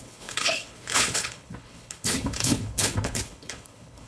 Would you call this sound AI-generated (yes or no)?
yes